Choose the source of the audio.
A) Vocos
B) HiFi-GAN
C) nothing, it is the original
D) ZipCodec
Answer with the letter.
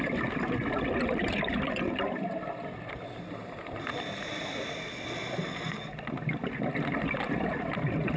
C